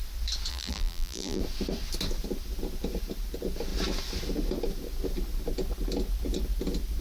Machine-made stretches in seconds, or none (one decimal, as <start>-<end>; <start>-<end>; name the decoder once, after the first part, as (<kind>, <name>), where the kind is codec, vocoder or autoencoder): 0.5-1.4 (vocoder, BigVGAN v2)

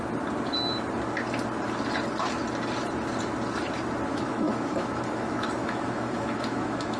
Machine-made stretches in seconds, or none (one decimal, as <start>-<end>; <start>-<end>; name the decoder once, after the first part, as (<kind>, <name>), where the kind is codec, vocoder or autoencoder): 4.1-7.0 (autoencoder, DAC-VAE)

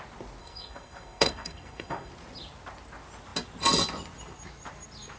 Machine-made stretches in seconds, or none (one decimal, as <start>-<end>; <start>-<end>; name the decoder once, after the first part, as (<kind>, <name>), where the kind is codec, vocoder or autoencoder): 0.4-2.1 (codec, SNAC)

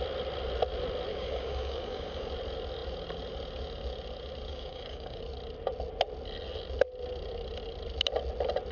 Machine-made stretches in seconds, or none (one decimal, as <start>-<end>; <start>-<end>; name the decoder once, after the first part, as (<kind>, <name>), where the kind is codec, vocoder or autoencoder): 1.1-2.3 (codec, DAC); 4.5-5.2